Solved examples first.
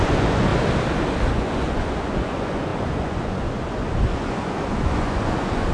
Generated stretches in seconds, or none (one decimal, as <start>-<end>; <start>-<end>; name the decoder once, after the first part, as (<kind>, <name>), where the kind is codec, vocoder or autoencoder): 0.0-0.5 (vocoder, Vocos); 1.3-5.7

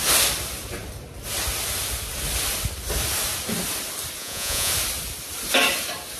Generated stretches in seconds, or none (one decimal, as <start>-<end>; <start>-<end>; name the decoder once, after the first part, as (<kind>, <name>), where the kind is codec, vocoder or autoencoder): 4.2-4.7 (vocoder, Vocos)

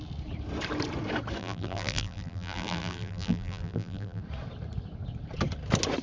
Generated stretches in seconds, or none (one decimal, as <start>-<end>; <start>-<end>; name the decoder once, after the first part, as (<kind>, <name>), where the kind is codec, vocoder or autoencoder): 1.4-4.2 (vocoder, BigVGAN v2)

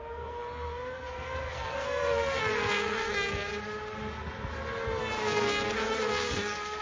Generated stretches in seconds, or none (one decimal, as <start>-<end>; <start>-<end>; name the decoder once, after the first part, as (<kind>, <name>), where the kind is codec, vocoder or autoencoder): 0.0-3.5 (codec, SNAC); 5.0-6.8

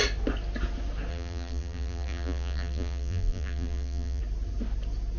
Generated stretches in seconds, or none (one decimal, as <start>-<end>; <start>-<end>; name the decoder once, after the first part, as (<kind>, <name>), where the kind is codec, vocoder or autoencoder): 1.1-4.2 (vocoder, BigVGAN v2)